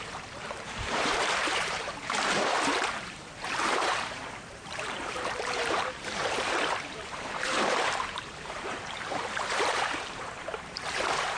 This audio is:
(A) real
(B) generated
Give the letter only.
B